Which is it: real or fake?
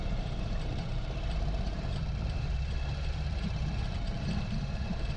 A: fake